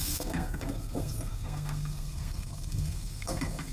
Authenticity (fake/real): fake